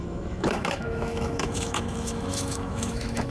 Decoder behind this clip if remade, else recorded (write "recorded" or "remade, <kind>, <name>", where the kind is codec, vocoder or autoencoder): remade, autoencoder, DAC-VAE